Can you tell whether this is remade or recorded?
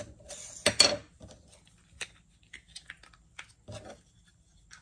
recorded